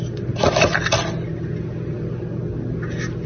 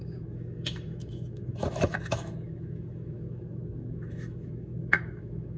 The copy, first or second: second